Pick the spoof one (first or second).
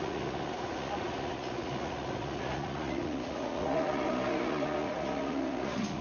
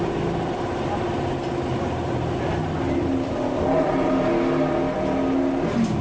first